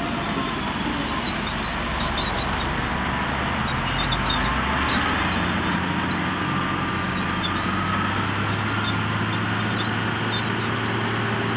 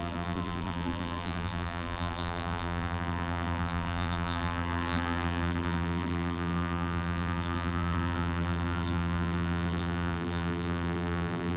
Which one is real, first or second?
first